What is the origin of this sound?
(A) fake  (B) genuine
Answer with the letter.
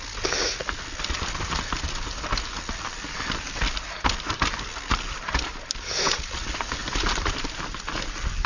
B